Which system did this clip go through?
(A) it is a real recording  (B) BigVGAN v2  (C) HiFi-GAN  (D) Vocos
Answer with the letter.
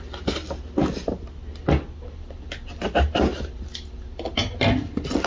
A